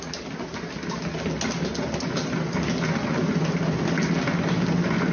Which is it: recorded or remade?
recorded